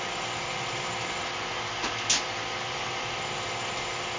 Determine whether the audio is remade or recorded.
recorded